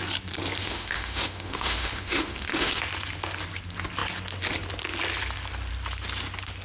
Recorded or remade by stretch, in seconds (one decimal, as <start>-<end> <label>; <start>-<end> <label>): 0.0-0.6 recorded; 0.6-2.8 remade; 2.8-6.6 recorded